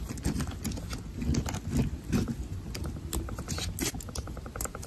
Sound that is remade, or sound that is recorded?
recorded